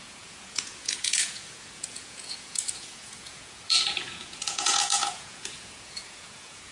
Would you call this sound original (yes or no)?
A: no